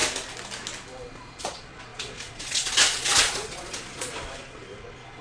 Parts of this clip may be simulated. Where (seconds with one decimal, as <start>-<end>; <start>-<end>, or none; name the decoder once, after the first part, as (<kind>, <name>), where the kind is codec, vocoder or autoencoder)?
1.4-5.2 (vocoder, Vocos)